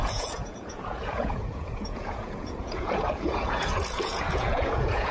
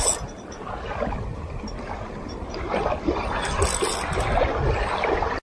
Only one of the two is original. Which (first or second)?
second